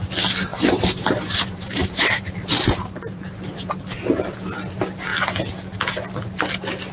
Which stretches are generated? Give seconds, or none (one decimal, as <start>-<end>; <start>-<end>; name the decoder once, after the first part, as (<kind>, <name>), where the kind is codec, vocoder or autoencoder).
0.5-3.2 (vocoder, BigVGAN v2)